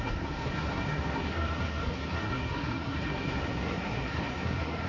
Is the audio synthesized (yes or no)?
yes